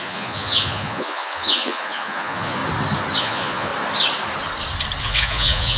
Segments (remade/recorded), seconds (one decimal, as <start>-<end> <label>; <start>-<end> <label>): 0.0-2.6 remade; 2.6-3.2 recorded; 3.2-3.7 remade; 3.7-5.0 recorded; 5.0-5.8 remade